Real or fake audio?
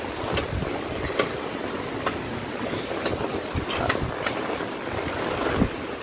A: real